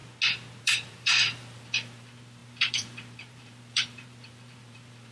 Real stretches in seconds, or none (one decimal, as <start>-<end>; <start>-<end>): 0.0-0.6